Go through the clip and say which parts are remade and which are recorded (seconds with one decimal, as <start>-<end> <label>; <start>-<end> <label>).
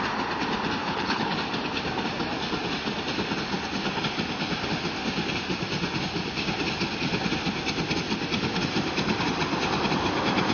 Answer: 0.0-0.8 recorded; 0.8-1.3 remade; 1.3-10.5 recorded